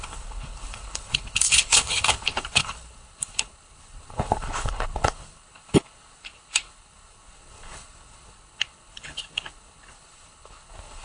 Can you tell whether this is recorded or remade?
remade